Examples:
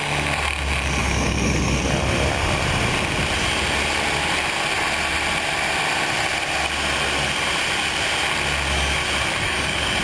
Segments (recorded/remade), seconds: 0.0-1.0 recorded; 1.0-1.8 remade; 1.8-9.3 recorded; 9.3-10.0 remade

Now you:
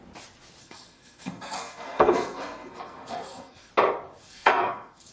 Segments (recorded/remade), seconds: 0.0-0.6 recorded; 0.6-3.7 remade; 3.7-4.2 recorded; 4.2-5.1 remade

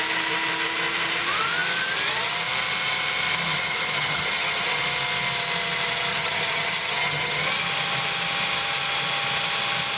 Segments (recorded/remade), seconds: 0.0-3.5 recorded; 3.5-4.8 remade; 4.8-6.1 recorded; 6.1-7.5 remade; 7.5-10.0 recorded

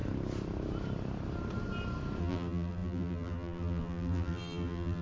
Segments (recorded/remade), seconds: 0.0-2.2 recorded; 2.2-5.0 remade

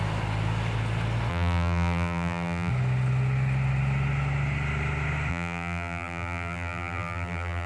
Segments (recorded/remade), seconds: 0.0-1.3 recorded; 1.3-2.7 remade; 2.7-5.3 recorded; 5.3-7.7 remade